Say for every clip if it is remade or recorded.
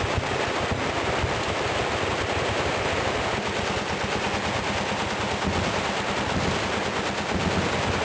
recorded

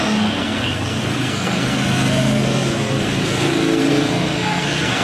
remade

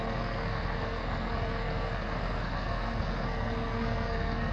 remade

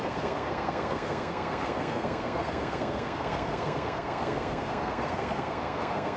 remade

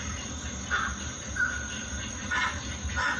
recorded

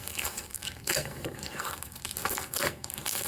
remade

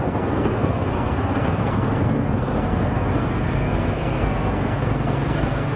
remade